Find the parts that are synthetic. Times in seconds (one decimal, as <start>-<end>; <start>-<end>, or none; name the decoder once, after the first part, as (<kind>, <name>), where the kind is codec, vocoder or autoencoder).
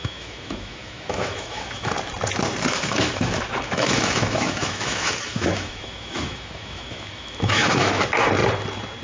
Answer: 0.0-1.9 (autoencoder, DAC-VAE); 2.7-8.0